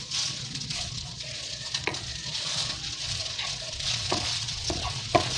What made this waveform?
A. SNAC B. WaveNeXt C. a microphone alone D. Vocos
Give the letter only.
D